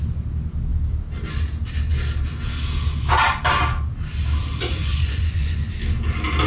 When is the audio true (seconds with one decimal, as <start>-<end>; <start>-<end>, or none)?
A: 0.0-4.7; 5.7-6.5